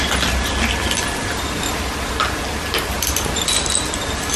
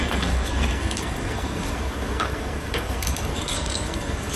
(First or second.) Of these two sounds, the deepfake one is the second